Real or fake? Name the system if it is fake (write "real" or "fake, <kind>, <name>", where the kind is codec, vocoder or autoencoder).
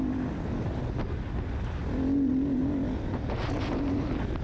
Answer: real